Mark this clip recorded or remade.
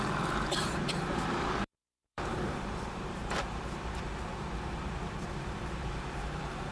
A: remade